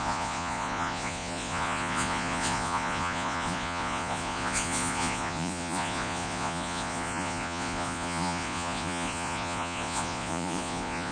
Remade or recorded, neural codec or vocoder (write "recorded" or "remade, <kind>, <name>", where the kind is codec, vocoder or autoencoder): remade, vocoder, Vocos